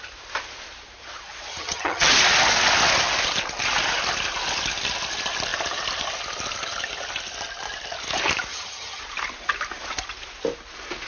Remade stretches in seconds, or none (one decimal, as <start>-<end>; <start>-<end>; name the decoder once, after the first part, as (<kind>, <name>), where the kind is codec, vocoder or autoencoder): 1.5-2.1 (vocoder, HiFi-GAN); 8.5-9.0